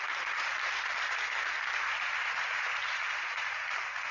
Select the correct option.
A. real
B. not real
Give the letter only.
A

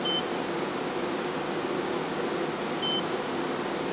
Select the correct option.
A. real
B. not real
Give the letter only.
A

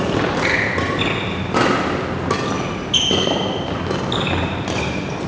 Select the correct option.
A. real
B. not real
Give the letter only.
A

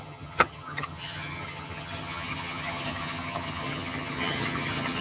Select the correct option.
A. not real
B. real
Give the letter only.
A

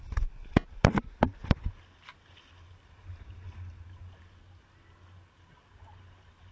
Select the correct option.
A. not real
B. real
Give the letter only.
B